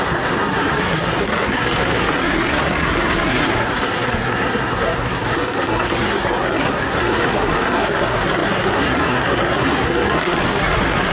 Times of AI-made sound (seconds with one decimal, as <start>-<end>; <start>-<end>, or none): 0.0-11.1